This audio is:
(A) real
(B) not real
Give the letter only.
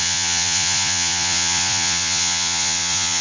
B